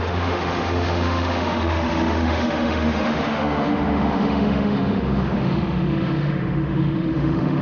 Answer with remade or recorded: remade